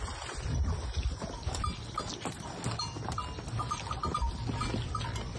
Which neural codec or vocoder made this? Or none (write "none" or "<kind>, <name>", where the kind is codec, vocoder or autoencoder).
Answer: none